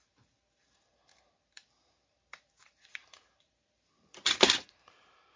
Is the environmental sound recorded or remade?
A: remade